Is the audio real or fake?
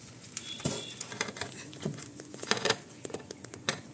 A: fake